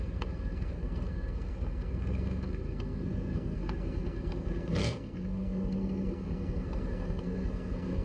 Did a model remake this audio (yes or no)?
yes